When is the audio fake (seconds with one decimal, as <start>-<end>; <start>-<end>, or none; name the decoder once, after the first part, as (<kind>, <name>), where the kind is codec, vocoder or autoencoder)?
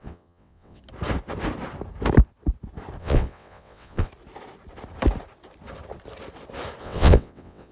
0.0-0.8 (vocoder, WaveNeXt); 3.0-4.1; 6.8-7.7